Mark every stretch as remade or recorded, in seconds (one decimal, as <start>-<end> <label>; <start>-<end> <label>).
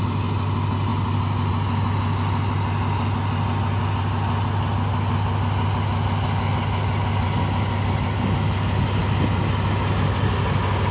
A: 0.0-10.9 recorded